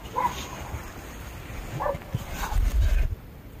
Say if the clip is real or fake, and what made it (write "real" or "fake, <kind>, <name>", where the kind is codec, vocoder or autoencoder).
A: real